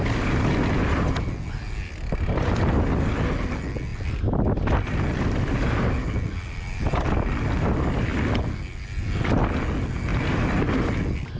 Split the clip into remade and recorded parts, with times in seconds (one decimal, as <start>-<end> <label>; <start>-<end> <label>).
0.0-11.4 recorded